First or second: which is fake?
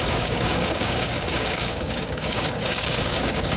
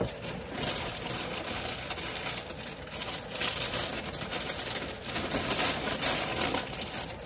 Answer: first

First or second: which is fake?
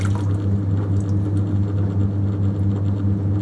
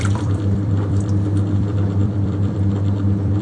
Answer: second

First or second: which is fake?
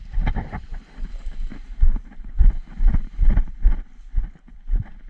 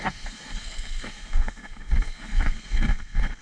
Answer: second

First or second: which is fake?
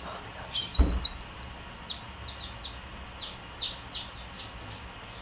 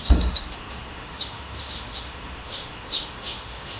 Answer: second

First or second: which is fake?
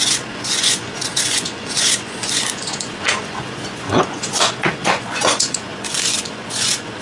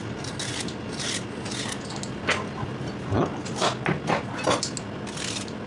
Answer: first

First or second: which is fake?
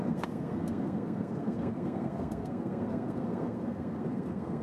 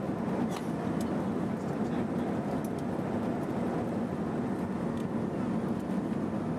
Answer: first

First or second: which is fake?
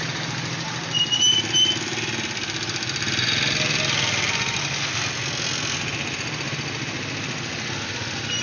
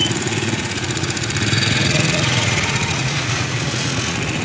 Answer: second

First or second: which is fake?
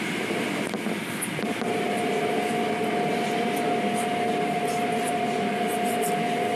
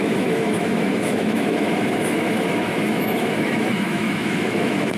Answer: second